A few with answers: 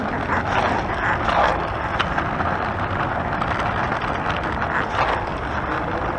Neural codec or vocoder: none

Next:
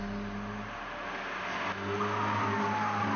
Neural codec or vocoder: none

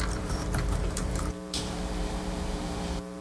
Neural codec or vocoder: vocoder, BigVGAN v2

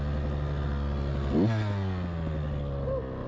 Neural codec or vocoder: none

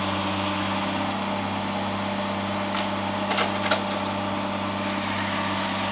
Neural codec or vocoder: none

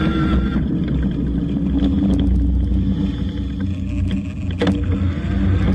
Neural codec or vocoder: none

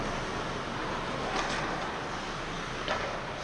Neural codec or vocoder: none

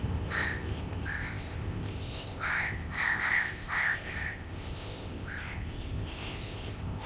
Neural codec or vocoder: codec, ZipCodec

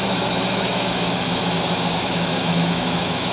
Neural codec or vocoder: autoencoder, DAC-VAE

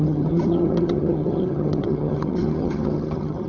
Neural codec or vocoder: vocoder, HiFi-GAN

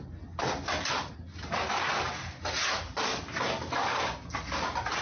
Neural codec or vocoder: none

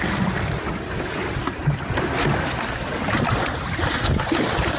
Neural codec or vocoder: none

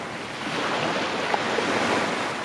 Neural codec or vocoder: none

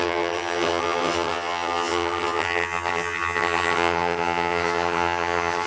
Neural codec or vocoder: vocoder, HiFi-GAN